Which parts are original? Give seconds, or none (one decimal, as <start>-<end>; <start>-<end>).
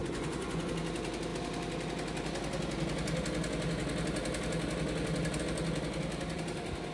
0.7-6.9